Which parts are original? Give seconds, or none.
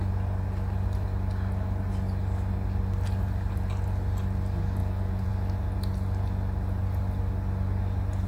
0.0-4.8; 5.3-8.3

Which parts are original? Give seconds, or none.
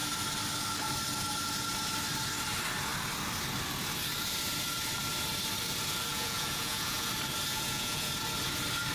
0.0-6.1; 7.1-7.5; 8.1-8.9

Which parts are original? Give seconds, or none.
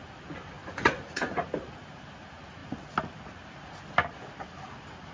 0.0-0.6; 1.5-5.1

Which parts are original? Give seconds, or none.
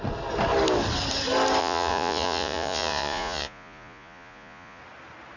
0.0-1.6; 4.8-5.4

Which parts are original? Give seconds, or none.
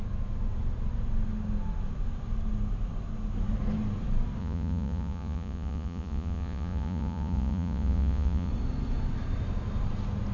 0.0-4.4; 8.5-10.3